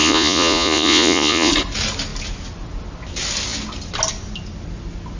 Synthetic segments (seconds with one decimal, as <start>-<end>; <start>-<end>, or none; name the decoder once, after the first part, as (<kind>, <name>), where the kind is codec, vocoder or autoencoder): 0.0-1.5 (vocoder, Vocos)